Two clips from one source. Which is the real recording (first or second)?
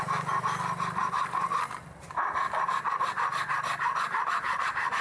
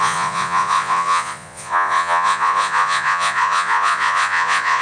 first